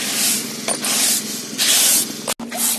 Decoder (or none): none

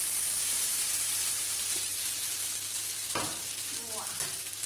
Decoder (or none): vocoder, BigVGAN v2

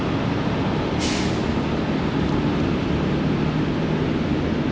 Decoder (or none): none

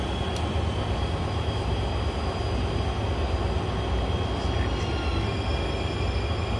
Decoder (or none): none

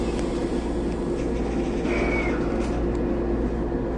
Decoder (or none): none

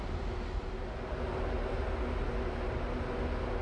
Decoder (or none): none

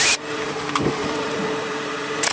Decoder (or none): vocoder, BigVGAN v2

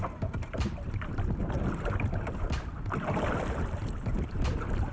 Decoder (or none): vocoder, BigVGAN v2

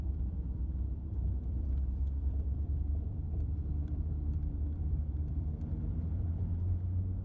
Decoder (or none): vocoder, BigVGAN v2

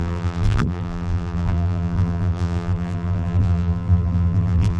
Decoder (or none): vocoder, BigVGAN v2